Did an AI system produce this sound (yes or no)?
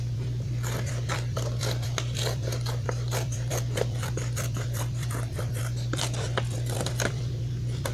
yes